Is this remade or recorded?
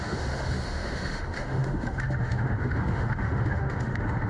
remade